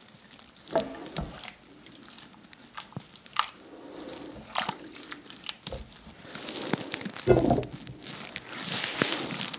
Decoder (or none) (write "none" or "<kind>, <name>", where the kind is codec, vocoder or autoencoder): none